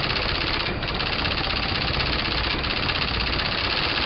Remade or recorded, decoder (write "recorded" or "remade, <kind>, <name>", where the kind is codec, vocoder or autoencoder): recorded